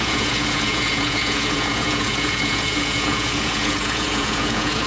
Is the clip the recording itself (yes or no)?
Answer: no